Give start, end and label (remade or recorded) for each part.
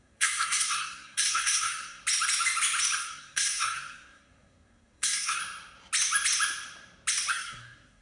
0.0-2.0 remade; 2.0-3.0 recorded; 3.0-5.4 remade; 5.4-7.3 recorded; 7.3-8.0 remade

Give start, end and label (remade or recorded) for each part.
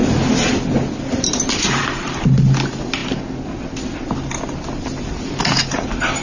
0.0-6.2 recorded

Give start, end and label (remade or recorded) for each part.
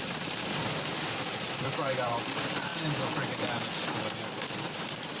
0.0-0.6 remade; 0.6-1.3 recorded; 1.3-2.7 remade; 2.7-4.7 recorded; 4.7-5.2 remade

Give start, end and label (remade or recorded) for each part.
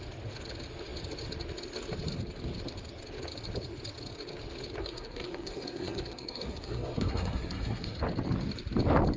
0.0-4.8 recorded; 4.8-8.0 remade; 8.0-9.2 recorded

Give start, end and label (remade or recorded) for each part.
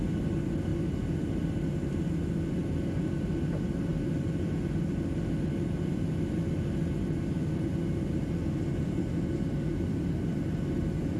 0.0-11.2 recorded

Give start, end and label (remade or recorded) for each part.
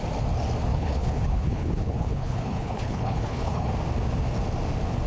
0.0-0.7 recorded; 0.7-3.7 remade; 3.7-5.1 recorded